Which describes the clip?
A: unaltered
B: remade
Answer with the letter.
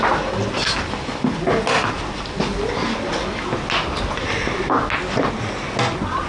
A